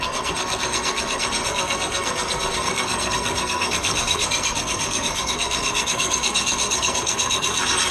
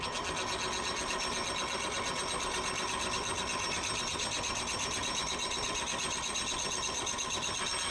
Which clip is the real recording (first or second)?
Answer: second